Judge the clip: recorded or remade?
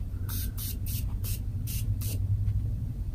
remade